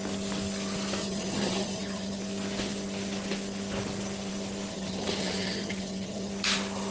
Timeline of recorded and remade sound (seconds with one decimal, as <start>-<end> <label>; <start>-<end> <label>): 0.0-1.0 recorded; 1.0-2.2 remade; 2.2-4.7 recorded; 4.7-6.3 remade; 6.3-6.9 recorded

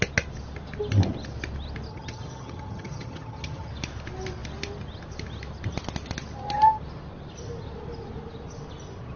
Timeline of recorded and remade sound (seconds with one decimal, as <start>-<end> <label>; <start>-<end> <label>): 0.0-1.9 recorded; 1.9-3.7 remade; 3.7-9.2 recorded

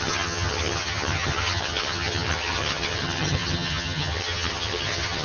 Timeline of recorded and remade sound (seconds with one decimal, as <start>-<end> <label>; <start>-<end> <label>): 0.0-5.2 remade